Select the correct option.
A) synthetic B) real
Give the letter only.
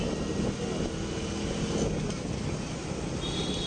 B